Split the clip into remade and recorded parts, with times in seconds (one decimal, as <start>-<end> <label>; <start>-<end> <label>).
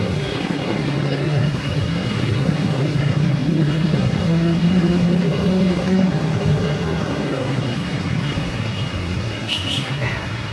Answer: 0.0-10.5 remade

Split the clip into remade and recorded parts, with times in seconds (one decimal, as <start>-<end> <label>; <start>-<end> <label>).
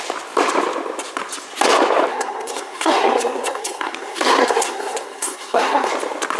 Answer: 0.0-2.1 recorded; 2.1-5.9 remade; 5.9-6.4 recorded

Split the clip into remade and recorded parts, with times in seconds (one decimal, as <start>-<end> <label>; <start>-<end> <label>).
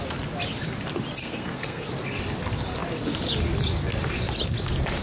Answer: 0.0-1.2 recorded; 1.2-1.9 remade; 1.9-5.0 recorded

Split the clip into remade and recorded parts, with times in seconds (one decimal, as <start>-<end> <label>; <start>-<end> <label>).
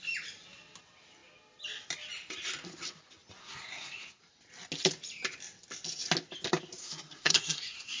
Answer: 0.0-3.4 recorded; 3.4-4.2 remade; 4.2-6.8 recorded; 6.8-8.0 remade